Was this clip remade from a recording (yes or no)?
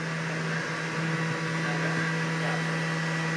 no